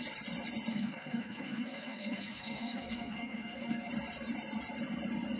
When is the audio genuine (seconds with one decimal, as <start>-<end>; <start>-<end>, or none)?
0.0-0.7; 3.9-5.4